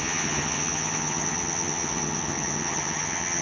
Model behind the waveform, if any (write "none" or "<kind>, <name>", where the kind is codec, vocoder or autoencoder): vocoder, HiFi-GAN